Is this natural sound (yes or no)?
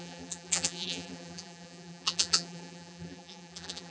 no